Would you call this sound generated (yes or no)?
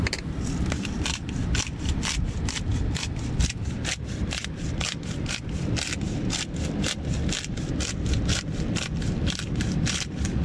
yes